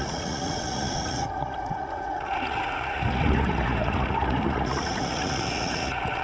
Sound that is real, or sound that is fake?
fake